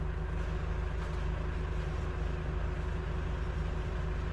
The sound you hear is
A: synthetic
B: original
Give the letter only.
B